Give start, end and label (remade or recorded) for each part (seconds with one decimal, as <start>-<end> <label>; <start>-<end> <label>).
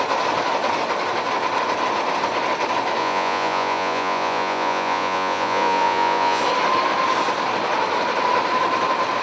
0.0-3.0 recorded; 3.0-6.4 remade; 6.4-9.2 recorded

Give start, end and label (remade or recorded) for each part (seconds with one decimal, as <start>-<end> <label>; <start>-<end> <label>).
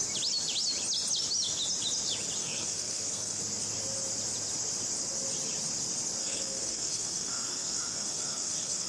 0.0-2.4 recorded; 2.4-3.4 remade; 3.4-6.2 recorded; 6.2-8.9 remade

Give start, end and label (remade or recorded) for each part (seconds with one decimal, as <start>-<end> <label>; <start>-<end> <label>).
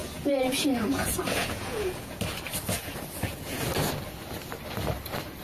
0.0-2.2 remade; 2.2-2.8 recorded; 2.8-3.6 remade; 3.6-5.4 recorded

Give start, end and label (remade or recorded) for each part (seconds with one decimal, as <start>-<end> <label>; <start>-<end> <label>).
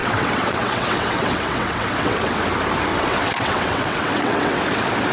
0.0-2.4 remade; 2.4-2.9 recorded; 2.9-4.6 remade; 4.6-5.1 recorded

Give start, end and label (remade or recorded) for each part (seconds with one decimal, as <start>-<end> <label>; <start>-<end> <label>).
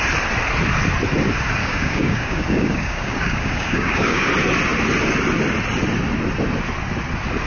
0.0-1.6 recorded; 1.6-4.3 remade; 4.3-7.5 recorded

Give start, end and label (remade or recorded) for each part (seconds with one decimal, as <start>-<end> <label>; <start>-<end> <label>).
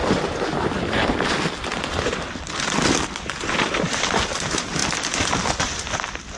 0.0-3.8 remade; 3.8-4.8 recorded; 4.8-5.5 remade; 5.5-6.4 recorded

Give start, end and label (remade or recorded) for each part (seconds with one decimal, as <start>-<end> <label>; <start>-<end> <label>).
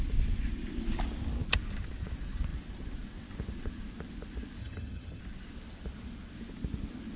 0.0-4.6 recorded; 4.6-5.2 remade; 5.2-7.2 recorded